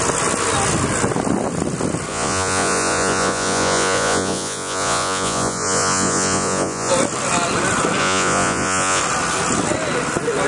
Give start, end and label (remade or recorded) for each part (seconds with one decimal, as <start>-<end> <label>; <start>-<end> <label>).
0.0-2.1 recorded; 2.1-6.9 remade; 6.9-8.0 recorded; 8.0-9.0 remade; 9.0-10.5 recorded